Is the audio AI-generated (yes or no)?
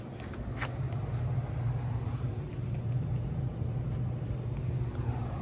no